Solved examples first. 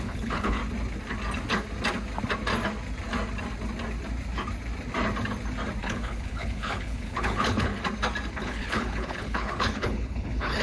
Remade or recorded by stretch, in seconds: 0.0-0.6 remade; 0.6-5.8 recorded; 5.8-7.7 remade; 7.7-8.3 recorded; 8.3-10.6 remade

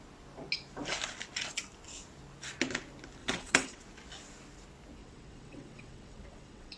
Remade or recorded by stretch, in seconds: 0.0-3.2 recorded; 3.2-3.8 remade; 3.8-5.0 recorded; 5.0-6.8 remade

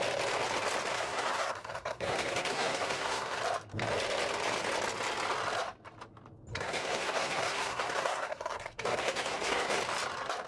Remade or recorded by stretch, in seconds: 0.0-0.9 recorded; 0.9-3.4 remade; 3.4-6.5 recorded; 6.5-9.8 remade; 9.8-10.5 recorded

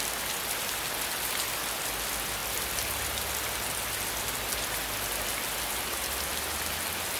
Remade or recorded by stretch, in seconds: 0.0-7.2 recorded

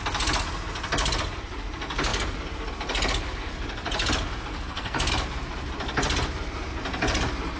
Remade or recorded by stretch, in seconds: 0.0-4.5 recorded; 4.5-5.1 remade; 5.1-7.6 recorded

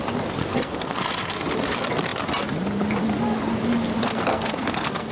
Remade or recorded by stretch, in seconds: 0.0-0.4 recorded; 0.4-1.0 remade; 1.0-4.0 recorded; 4.0-5.1 remade

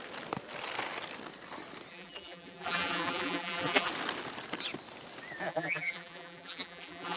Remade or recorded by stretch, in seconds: 0.0-1.9 recorded; 1.9-3.9 remade; 3.9-5.5 recorded; 5.5-7.2 remade

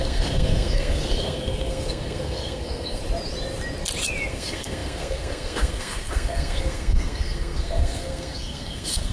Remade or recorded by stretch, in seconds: 0.0-3.0 remade; 3.0-4.3 recorded; 4.3-9.1 remade